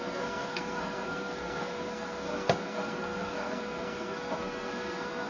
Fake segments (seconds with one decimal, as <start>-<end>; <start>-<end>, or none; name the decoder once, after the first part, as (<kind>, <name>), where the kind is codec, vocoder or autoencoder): 0.0-5.3 (codec, SNAC)